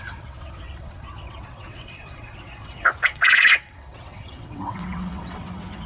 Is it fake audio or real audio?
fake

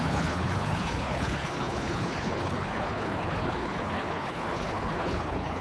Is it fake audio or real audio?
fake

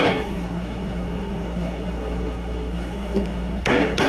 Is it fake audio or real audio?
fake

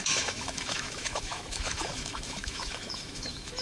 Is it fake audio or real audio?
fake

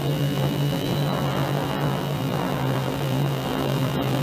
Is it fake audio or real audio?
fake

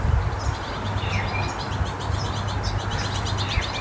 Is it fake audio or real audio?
real